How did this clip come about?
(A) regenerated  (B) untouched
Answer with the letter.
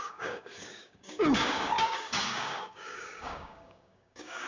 A